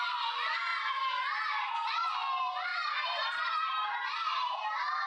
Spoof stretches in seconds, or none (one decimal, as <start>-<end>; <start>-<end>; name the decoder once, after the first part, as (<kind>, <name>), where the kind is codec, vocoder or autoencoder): 0.7-1.7 (vocoder, BigVGAN v2); 2.7-5.1